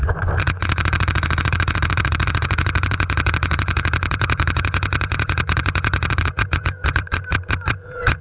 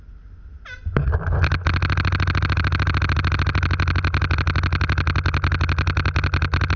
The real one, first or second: second